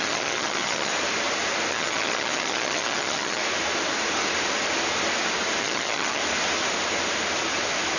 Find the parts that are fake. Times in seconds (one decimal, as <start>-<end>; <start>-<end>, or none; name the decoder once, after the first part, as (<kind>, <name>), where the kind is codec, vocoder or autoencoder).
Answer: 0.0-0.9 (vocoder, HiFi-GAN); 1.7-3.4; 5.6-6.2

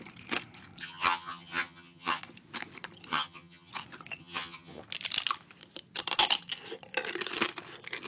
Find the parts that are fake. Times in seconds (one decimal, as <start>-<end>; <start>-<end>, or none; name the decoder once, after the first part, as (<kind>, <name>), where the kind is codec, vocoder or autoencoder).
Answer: 0.8-2.2 (vocoder, HiFi-GAN); 3.1-3.7; 4.2-4.8

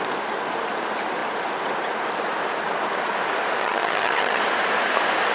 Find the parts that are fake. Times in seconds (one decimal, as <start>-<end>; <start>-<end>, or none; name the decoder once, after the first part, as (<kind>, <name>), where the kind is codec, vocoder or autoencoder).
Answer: 3.6-4.4 (vocoder, HiFi-GAN)

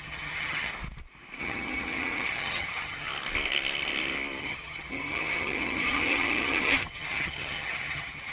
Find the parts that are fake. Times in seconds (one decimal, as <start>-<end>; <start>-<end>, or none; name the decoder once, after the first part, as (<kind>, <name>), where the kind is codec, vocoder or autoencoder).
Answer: 0.0-0.7 (vocoder, HiFi-GAN); 1.4-3.1; 4.4-8.3

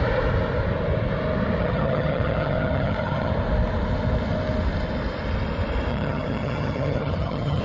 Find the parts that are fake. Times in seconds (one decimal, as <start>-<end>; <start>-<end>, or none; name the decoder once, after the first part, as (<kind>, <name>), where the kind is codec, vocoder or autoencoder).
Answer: 1.6-3.3 (vocoder, HiFi-GAN); 5.9-7.6